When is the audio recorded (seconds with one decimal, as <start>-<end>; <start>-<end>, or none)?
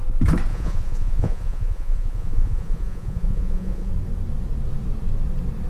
0.0-0.5; 3.9-5.7